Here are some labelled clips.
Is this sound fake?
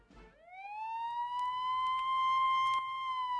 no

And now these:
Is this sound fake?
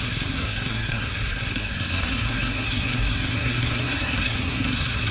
yes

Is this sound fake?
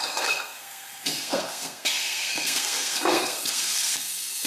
yes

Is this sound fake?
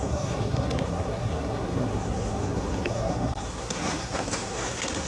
yes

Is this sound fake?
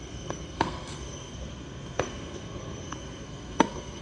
yes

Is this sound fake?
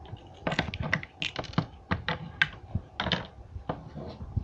no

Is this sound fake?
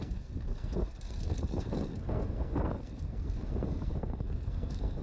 yes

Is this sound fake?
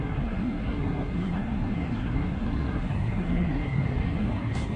yes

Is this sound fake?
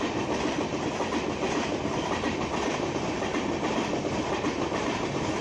no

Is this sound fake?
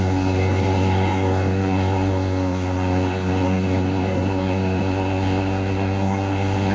yes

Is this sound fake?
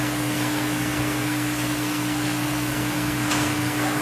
yes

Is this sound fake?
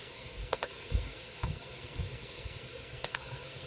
yes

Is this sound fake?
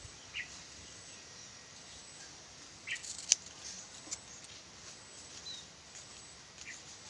no